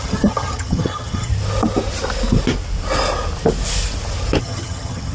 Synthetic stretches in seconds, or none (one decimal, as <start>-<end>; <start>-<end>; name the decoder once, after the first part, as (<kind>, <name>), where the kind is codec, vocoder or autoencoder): 0.0-1.3 (vocoder, HiFi-GAN); 4.4-5.1